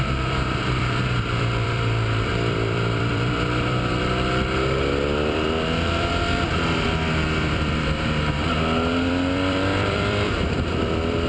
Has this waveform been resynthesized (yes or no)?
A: yes